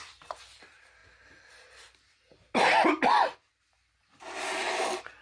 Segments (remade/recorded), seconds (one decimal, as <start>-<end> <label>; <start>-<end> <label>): 0.0-5.2 recorded